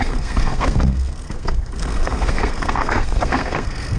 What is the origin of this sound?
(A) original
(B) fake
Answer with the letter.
B